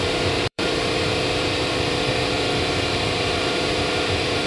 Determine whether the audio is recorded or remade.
remade